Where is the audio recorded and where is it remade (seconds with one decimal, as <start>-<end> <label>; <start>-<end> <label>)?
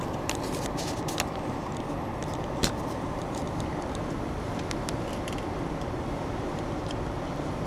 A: 0.0-2.2 recorded; 2.2-3.4 remade; 3.4-7.7 recorded